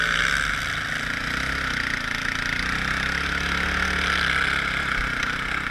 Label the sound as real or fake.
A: real